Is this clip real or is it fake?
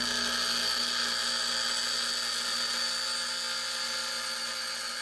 real